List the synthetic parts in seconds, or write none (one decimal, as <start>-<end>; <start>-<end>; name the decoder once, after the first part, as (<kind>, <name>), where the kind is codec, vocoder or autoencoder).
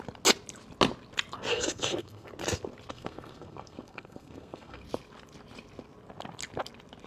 1.5-2.3 (codec, SNAC); 2.9-4.8